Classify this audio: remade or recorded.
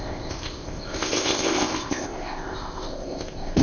remade